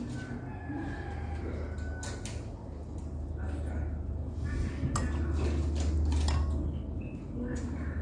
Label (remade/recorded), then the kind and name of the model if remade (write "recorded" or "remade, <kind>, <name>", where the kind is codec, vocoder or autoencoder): recorded